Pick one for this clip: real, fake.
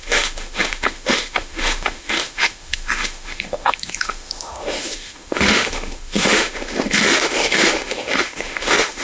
fake